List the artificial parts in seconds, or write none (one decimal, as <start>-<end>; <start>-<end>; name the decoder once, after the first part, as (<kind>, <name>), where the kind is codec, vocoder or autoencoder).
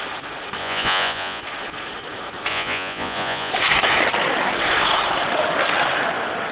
0.6-1.4 (vocoder, Vocos); 2.5-3.5